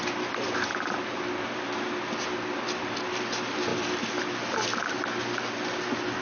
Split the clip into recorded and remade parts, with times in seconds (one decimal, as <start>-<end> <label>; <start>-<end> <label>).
0.0-6.2 recorded